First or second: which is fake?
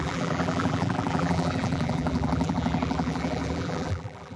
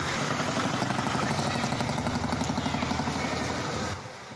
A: first